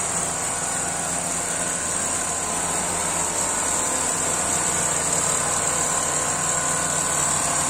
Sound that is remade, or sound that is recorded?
recorded